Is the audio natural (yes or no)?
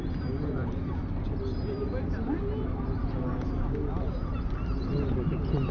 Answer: yes